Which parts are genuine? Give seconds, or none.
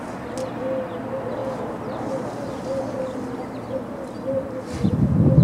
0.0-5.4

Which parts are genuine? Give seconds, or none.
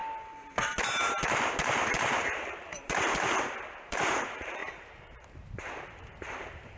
0.0-0.7